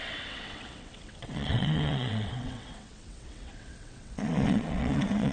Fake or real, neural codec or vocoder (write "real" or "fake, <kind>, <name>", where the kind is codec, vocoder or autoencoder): fake, vocoder, WaveNeXt